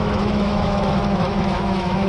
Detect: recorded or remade remade